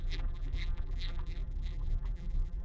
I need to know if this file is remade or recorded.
remade